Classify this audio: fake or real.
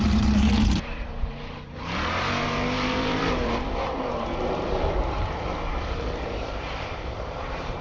fake